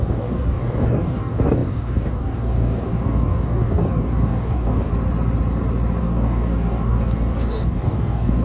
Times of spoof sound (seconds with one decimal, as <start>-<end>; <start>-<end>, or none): 0.0-4.9; 6.0-8.4